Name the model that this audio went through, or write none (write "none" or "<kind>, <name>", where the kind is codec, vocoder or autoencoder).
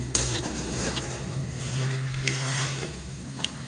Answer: codec, SNAC